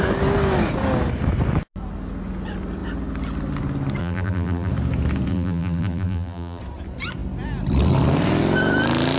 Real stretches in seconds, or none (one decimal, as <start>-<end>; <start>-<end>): 0.0-4.0; 4.7-5.3; 6.6-9.2